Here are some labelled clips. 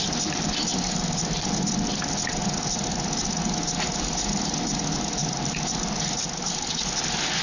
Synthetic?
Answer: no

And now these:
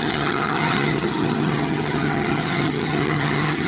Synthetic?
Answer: yes